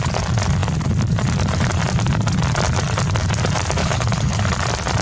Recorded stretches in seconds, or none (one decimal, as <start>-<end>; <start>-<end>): 0.0-3.8; 4.4-5.0